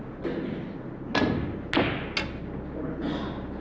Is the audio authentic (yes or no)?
yes